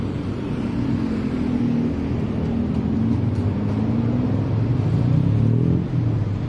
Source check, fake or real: real